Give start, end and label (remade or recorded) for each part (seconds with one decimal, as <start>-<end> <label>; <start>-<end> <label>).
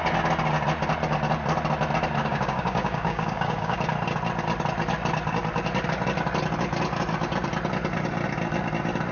0.0-2.2 recorded; 2.2-3.8 remade; 3.8-9.1 recorded